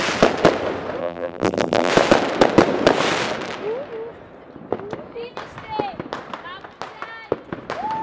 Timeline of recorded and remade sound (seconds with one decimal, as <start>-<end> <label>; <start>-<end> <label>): 0.0-1.0 recorded; 1.0-1.9 remade; 1.9-8.0 recorded